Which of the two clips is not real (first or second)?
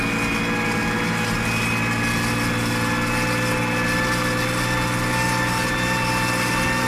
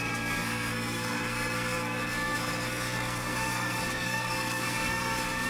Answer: second